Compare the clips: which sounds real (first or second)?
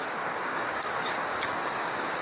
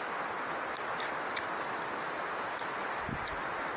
second